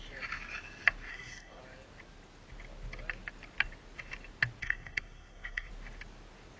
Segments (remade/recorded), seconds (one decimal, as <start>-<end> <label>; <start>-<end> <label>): 0.0-1.1 recorded; 1.1-1.6 remade; 1.6-4.6 recorded; 4.6-5.7 remade; 5.7-6.6 recorded